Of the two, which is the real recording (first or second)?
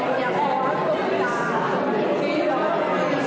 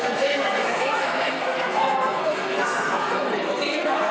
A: first